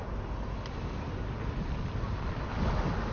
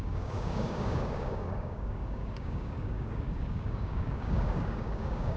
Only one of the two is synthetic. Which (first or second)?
second